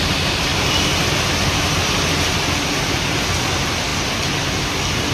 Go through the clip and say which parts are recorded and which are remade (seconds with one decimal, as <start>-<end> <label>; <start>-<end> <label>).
0.0-5.1 recorded